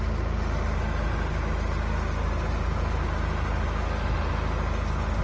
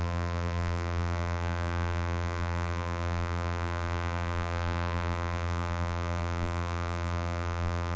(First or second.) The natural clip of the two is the first